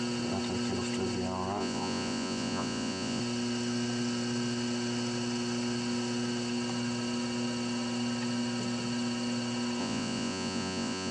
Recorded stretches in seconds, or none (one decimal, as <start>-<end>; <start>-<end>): 0.0-1.6; 3.2-9.8